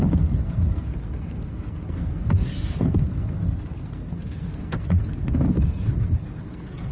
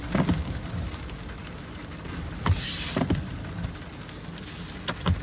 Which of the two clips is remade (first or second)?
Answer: first